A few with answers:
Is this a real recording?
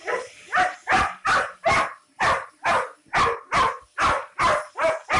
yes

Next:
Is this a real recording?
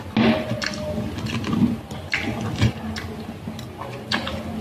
yes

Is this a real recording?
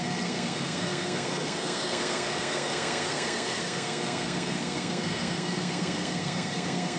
no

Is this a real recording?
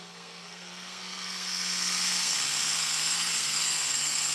no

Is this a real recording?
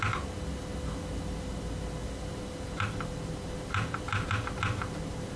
yes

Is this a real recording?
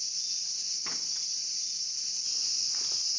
yes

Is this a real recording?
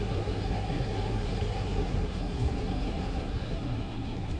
no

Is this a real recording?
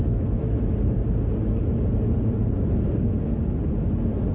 yes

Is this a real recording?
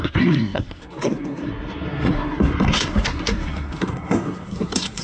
no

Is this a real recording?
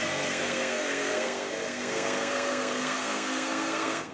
no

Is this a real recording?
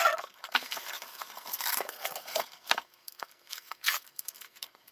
no